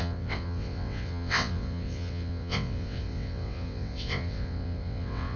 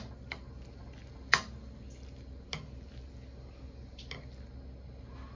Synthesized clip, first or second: first